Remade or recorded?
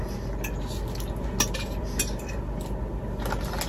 recorded